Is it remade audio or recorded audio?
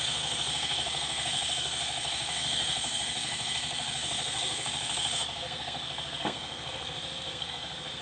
remade